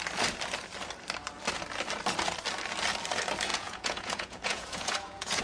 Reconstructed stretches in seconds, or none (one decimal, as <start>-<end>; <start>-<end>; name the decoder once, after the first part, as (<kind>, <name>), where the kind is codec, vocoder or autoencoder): 3.5-5.4 (vocoder, Vocos)